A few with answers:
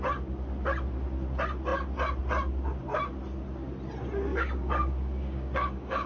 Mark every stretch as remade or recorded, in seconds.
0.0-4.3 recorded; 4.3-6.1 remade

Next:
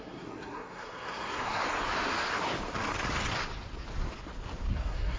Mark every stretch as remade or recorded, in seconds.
0.0-1.6 remade; 1.6-4.7 recorded; 4.7-5.2 remade

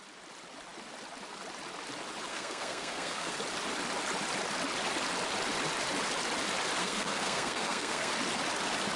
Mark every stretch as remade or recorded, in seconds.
0.0-2.3 recorded; 2.3-3.4 remade; 3.4-6.8 recorded; 6.8-8.1 remade; 8.1-9.0 recorded

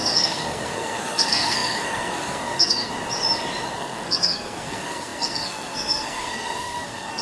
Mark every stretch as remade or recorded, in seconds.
0.0-2.9 remade; 2.9-3.7 recorded; 3.7-7.2 remade

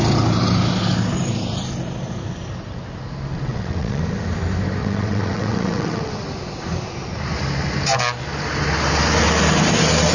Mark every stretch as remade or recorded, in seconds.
0.0-3.3 recorded; 3.3-4.0 remade; 4.0-4.8 recorded; 4.8-6.1 remade; 6.1-10.1 recorded

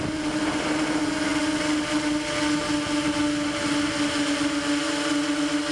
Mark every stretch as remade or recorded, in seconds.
0.0-5.7 recorded

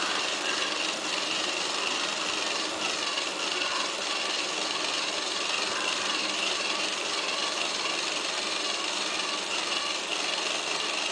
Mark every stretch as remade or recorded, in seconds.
0.0-11.1 recorded

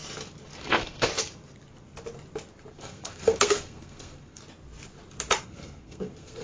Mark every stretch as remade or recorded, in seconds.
0.0-0.6 recorded; 0.6-1.1 remade; 1.1-2.7 recorded; 2.7-4.4 remade; 4.4-5.4 recorded; 5.4-6.4 remade